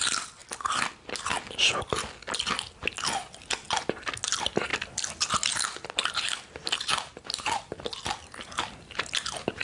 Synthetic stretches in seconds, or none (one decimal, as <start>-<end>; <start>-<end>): none